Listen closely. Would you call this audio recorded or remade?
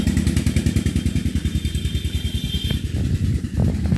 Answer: recorded